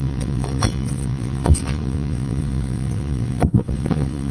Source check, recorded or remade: remade